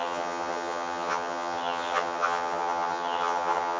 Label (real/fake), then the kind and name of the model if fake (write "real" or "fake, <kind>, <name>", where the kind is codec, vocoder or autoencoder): fake, vocoder, HiFi-GAN